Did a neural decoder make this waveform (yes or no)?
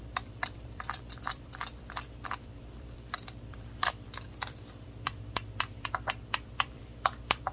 yes